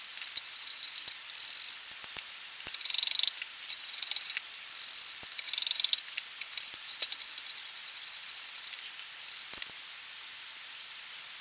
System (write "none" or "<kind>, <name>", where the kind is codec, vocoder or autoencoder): none